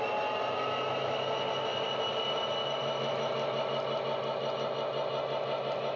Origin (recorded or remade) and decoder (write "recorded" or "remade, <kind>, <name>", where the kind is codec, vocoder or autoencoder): recorded